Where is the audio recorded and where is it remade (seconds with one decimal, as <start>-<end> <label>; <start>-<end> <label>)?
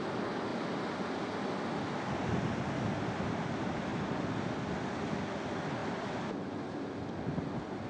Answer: 0.0-7.9 recorded